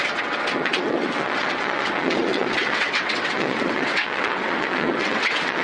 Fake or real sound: fake